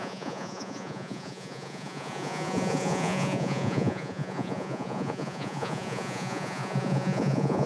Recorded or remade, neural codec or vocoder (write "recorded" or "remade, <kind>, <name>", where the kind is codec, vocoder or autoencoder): remade, vocoder, Vocos